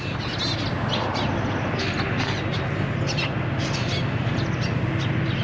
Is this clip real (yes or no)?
yes